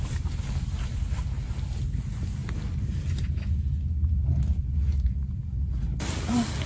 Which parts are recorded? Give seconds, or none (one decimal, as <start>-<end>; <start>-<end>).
0.0-6.7